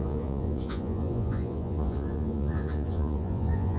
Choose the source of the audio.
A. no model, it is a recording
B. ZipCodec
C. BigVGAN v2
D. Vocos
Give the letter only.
D